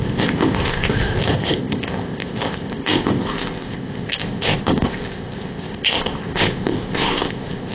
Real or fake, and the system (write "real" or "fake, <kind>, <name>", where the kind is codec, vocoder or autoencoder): fake, codec, ZipCodec